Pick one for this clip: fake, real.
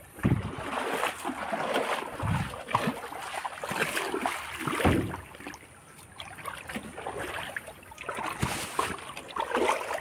real